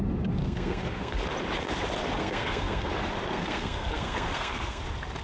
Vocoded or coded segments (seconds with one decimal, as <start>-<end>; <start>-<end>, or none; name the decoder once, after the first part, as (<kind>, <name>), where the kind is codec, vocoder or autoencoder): 0.4-1.2 (codec, SNAC); 2.2-2.9; 3.3-4.8